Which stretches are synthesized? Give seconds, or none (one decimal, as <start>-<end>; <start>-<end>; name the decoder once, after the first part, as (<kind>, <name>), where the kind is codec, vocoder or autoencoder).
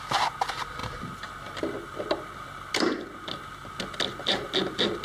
none